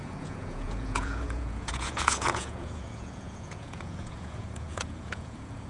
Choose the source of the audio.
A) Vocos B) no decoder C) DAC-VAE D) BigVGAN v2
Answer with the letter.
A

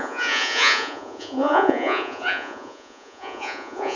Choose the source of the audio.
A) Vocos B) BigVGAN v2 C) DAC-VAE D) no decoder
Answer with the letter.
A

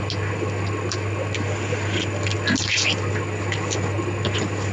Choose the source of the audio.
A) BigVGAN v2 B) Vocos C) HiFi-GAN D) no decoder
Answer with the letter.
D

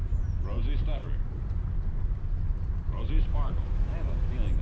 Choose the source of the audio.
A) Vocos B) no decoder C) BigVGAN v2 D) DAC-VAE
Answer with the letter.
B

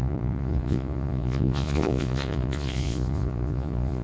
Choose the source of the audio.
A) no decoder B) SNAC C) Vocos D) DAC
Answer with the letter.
C